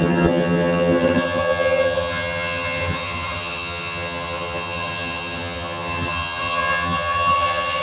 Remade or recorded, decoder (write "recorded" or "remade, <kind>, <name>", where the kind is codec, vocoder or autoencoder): remade, vocoder, HiFi-GAN